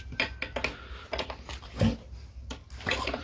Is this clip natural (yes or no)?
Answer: yes